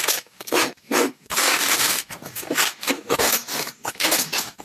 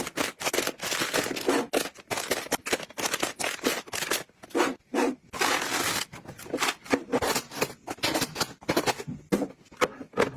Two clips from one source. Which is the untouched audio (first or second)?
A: second